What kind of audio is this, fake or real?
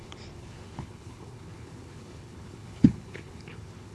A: fake